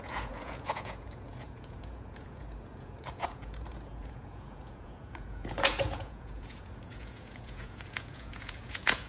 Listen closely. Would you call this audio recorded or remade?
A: remade